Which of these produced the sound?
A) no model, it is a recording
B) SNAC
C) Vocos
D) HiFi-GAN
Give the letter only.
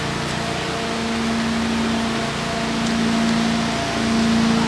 A